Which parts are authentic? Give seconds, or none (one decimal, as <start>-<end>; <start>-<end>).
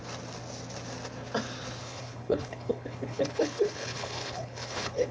0.0-1.8